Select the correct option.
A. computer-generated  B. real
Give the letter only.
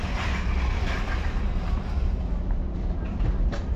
B